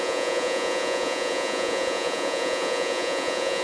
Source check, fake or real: fake